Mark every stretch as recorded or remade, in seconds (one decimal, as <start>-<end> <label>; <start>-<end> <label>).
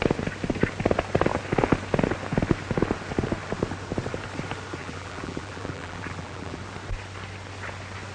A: 0.0-4.8 recorded; 4.8-6.6 remade; 6.6-8.1 recorded